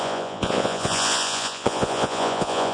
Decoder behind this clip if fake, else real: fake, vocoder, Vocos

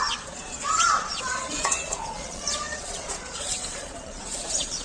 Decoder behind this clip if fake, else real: fake, vocoder, Vocos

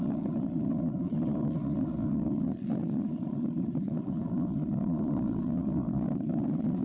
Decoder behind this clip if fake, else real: fake, vocoder, Vocos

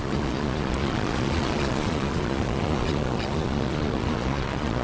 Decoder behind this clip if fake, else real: fake, vocoder, Vocos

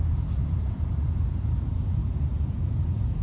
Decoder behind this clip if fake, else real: fake, vocoder, Vocos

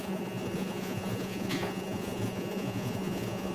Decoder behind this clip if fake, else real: fake, vocoder, Vocos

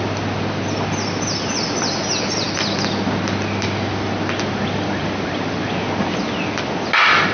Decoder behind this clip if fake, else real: real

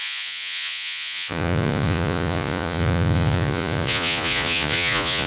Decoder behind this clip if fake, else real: fake, vocoder, Vocos